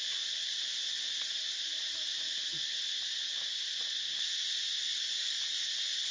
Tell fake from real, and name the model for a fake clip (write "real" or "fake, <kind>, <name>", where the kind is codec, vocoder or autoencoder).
real